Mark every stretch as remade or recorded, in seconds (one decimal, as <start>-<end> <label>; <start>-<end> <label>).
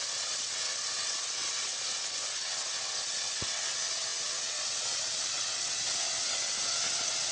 0.0-7.3 remade